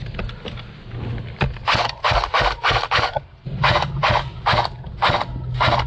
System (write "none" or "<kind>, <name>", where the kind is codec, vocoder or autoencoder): none